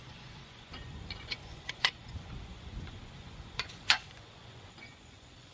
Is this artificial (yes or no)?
yes